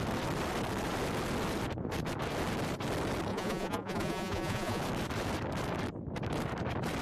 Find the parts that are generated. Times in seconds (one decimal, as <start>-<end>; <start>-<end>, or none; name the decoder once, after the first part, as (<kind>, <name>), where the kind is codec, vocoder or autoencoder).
3.3-4.8 (vocoder, Vocos)